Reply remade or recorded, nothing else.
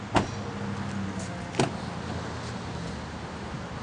recorded